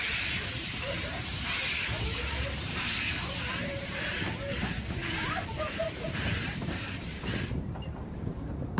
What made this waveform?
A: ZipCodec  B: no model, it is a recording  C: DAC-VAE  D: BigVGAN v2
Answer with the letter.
D